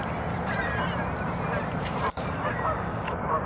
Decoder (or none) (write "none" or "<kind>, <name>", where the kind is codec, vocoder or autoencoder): vocoder, BigVGAN v2